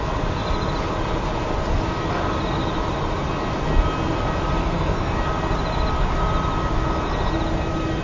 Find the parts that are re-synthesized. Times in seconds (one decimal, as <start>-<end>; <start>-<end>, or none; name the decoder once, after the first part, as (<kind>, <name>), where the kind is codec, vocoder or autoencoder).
4.6-5.1 (codec, SNAC)